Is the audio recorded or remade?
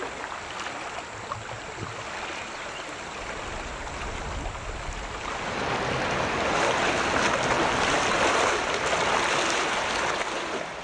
recorded